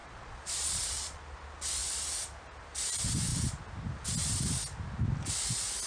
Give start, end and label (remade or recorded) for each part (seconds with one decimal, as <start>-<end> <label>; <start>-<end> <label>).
0.0-1.2 remade; 1.2-5.9 recorded